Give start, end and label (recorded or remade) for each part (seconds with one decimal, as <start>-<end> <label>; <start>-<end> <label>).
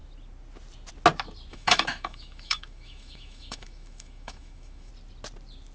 0.0-1.5 recorded; 1.5-4.9 remade; 4.9-5.7 recorded